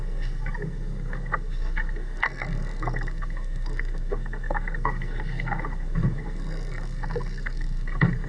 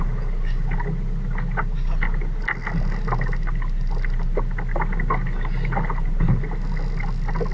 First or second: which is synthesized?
first